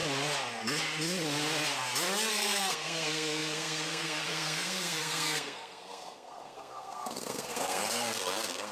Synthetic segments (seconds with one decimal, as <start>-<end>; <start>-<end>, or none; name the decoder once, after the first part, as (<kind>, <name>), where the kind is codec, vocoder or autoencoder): 2.3-8.7 (codec, SNAC)